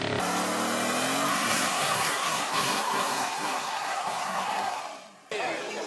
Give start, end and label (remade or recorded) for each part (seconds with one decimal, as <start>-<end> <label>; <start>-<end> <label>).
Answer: 0.0-1.3 recorded; 1.3-4.8 remade; 4.8-5.9 recorded